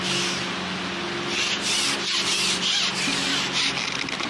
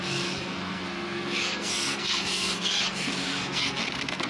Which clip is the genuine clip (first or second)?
first